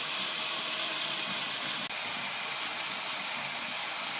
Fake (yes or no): no